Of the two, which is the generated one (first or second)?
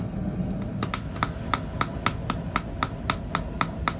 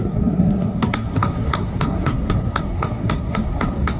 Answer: second